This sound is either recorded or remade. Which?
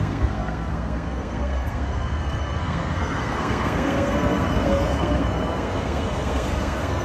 remade